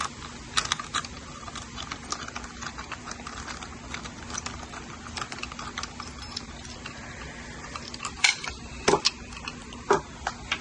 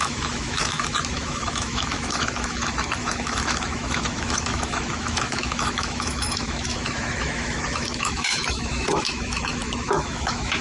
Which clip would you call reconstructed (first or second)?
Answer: second